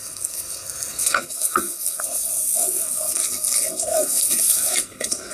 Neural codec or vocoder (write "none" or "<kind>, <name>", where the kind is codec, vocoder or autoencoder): codec, SNAC